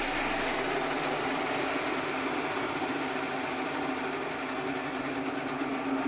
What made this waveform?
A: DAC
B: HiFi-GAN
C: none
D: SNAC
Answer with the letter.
C